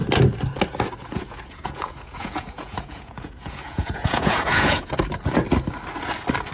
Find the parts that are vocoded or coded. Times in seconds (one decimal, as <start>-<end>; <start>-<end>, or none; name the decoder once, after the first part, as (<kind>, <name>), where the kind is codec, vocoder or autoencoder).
1.0-4.9 (vocoder, Vocos)

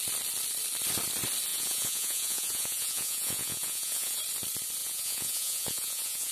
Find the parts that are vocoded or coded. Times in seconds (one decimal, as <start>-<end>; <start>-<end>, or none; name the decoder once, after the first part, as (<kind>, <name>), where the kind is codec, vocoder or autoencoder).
1.5-4.2 (vocoder, Vocos); 4.8-6.3

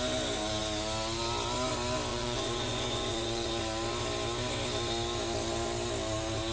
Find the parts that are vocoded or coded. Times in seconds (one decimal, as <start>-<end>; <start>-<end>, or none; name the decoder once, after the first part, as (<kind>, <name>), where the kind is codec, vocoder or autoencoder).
2.1-3.5 (vocoder, Vocos)

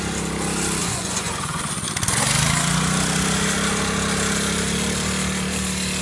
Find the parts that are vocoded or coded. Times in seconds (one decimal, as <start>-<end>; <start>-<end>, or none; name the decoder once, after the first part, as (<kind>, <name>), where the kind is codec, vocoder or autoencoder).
0.8-1.6 (vocoder, Vocos)

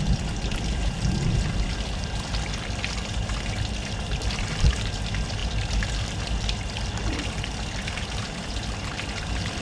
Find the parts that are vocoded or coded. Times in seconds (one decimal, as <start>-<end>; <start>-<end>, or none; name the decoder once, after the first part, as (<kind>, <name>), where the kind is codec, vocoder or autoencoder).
none

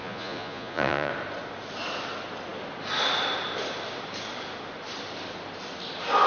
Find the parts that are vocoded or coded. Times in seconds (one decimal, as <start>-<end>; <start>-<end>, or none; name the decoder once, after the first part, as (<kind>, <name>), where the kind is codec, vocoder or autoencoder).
0.0-1.1 (vocoder, Vocos)

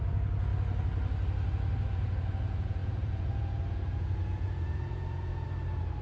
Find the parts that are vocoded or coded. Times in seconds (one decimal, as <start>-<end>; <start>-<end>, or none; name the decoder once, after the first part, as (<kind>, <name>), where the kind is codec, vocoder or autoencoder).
0.0-0.5 (vocoder, Vocos); 1.9-5.3

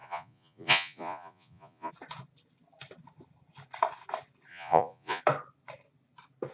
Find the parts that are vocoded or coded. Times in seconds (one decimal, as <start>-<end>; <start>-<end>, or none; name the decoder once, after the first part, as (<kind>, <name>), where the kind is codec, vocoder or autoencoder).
0.0-1.9 (vocoder, Vocos); 4.5-5.2